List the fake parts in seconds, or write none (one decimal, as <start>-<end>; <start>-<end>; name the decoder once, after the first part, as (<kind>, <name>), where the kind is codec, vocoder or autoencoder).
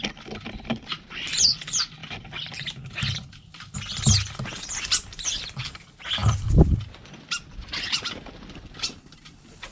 none